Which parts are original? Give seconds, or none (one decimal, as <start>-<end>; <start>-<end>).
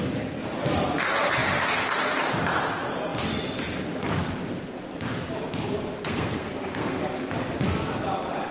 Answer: 0.0-6.0; 7.0-8.5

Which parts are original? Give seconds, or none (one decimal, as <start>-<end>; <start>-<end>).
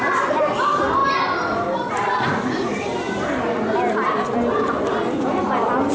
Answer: 0.0-5.9